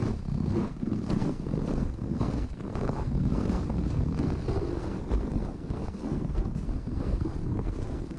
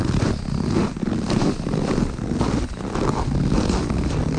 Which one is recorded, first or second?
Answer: second